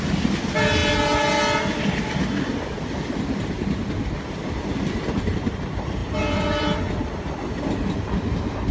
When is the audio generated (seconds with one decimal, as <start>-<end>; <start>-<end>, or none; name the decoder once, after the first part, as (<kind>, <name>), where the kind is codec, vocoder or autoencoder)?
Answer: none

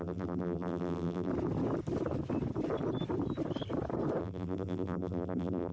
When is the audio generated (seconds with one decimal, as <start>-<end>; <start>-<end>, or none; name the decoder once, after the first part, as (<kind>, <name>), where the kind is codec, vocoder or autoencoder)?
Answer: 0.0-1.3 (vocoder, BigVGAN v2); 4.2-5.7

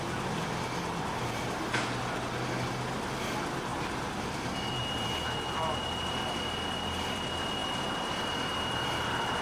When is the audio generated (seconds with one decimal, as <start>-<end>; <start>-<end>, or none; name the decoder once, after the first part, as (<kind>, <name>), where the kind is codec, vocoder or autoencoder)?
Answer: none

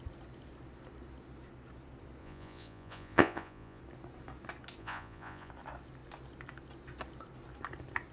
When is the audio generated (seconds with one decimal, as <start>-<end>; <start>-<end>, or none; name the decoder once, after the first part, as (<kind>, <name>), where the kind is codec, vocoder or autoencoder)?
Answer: 2.2-3.8 (vocoder, Vocos); 4.8-5.5

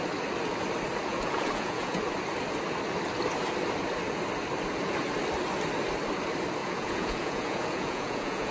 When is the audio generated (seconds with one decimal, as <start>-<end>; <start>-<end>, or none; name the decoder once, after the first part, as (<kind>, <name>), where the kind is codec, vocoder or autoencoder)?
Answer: 1.1-2.0 (vocoder, Vocos); 6.6-8.5